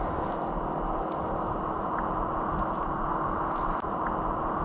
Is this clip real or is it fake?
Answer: real